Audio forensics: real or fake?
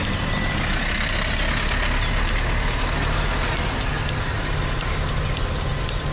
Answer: real